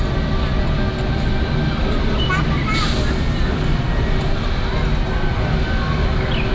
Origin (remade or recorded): recorded